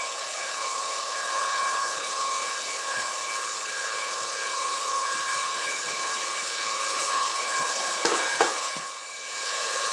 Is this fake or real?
fake